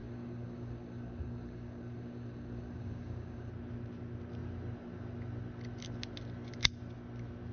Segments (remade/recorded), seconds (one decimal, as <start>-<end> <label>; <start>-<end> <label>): 0.0-3.5 remade; 3.5-7.5 recorded